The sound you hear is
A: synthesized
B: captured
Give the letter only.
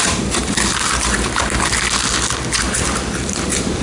B